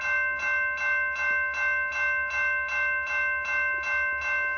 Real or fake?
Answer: real